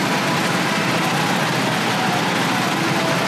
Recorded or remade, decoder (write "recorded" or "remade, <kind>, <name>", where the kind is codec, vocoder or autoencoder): recorded